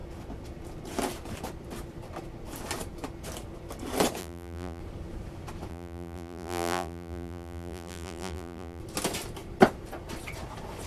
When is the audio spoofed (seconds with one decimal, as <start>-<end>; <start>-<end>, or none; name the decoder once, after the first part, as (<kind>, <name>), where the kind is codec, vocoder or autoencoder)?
4.2-4.8 (vocoder, BigVGAN v2); 5.7-8.8